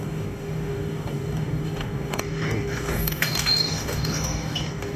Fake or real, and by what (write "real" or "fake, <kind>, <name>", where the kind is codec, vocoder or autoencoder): fake, codec, DAC